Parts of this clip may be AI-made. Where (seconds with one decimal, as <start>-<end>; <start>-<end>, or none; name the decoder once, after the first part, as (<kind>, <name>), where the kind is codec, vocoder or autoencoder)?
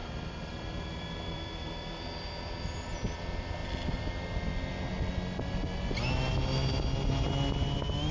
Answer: 0.0-2.9 (vocoder, BigVGAN v2)